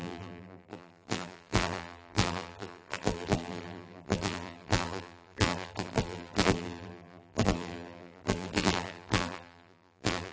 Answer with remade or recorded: remade